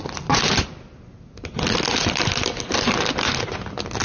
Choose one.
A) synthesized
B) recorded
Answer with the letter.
B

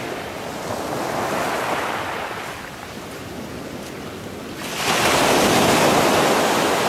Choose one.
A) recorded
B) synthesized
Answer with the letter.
A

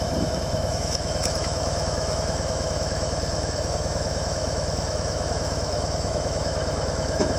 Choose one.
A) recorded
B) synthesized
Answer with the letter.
B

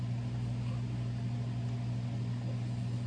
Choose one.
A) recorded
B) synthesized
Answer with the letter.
A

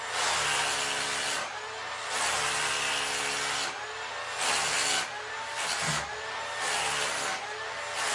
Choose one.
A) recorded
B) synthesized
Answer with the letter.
A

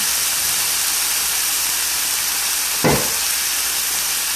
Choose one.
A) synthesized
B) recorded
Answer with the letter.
B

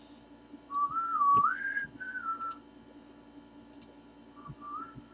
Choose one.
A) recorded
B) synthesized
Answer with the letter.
A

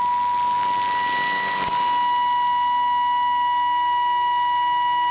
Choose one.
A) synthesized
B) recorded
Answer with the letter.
B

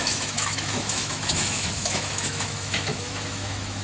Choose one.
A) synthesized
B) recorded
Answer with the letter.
A